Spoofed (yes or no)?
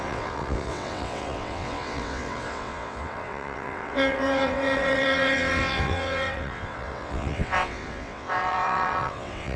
yes